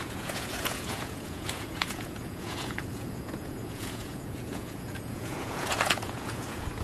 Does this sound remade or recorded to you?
remade